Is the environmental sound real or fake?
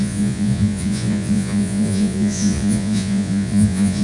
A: fake